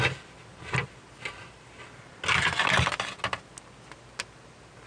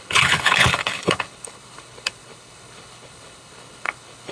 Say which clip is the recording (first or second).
first